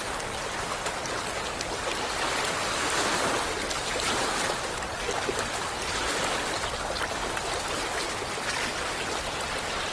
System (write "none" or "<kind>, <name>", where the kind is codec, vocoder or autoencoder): none